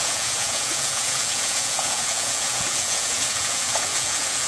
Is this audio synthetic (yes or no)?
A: yes